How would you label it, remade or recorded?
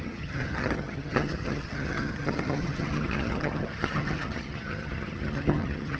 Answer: remade